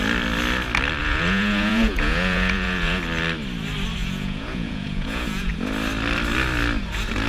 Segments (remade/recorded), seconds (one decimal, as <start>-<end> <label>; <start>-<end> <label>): 0.0-1.0 recorded; 1.0-3.0 remade; 3.0-4.0 recorded; 4.0-5.5 remade; 5.5-7.3 recorded